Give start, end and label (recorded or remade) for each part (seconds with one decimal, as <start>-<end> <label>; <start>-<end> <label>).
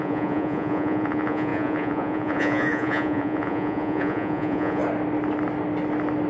0.0-4.8 remade; 4.8-6.3 recorded